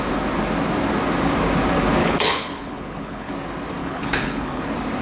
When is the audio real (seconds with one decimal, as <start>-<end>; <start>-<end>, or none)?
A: 0.0-2.0; 3.3-3.8; 4.6-5.0